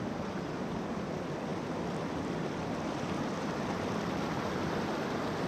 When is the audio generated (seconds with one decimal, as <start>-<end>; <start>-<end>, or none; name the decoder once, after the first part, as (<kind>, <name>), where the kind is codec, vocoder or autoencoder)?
none